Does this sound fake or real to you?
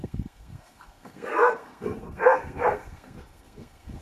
fake